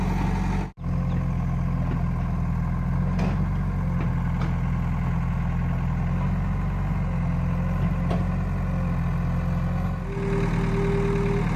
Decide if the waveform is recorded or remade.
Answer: recorded